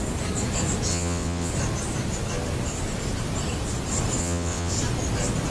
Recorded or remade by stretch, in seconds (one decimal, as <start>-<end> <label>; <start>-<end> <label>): 0.0-0.9 recorded; 0.9-1.5 remade; 1.5-4.2 recorded; 4.2-4.7 remade; 4.7-5.5 recorded